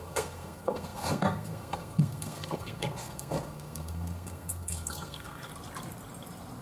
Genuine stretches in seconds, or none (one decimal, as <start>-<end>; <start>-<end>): 5.5-6.6